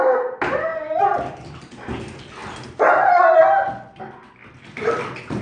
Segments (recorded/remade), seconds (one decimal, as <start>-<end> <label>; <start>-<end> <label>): 0.0-0.7 recorded; 0.7-1.3 remade; 1.3-2.4 recorded; 2.4-3.4 remade; 3.4-5.4 recorded